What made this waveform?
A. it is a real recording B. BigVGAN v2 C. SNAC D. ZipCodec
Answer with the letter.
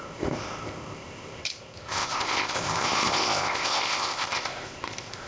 D